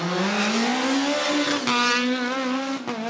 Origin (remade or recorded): recorded